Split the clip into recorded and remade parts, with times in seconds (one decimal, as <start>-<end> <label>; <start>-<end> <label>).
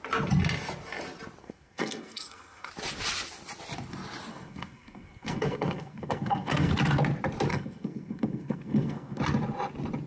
0.0-1.4 recorded; 1.4-2.7 remade; 2.7-4.3 recorded; 4.3-6.7 remade; 6.7-7.5 recorded; 7.5-9.2 remade; 9.2-10.1 recorded